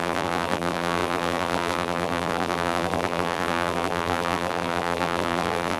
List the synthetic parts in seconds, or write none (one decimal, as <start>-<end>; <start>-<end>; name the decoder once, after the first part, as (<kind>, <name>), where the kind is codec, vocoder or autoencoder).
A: 0.0-5.8 (vocoder, BigVGAN v2)